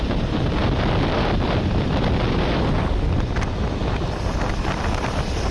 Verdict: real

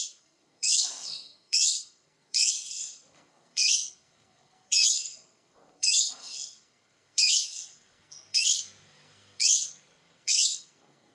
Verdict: fake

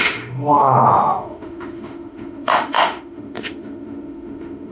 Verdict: fake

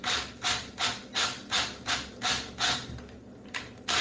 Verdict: real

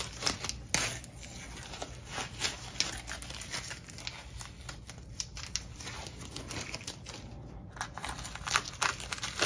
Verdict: real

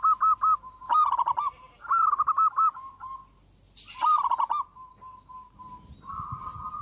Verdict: real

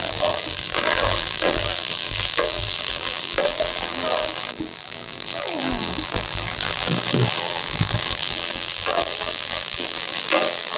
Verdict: fake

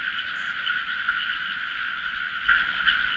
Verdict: real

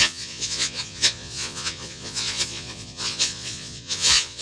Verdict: fake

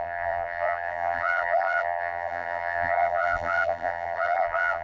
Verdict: fake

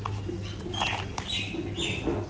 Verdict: real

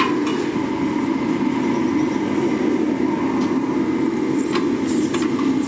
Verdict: real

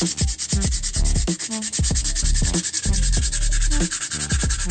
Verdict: real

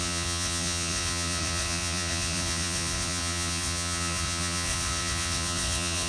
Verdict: fake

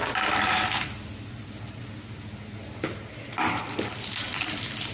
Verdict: real